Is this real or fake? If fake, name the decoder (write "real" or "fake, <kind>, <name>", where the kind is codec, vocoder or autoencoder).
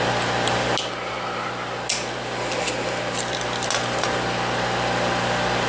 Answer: real